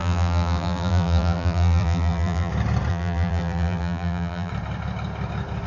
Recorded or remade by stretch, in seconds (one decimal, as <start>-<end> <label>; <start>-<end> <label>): 0.0-2.5 remade; 2.5-2.9 recorded; 2.9-4.5 remade; 4.5-5.7 recorded